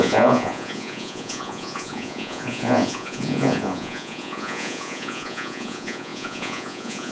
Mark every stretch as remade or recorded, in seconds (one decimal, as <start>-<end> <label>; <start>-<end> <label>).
0.0-7.1 remade